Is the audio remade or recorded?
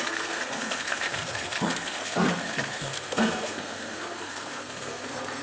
remade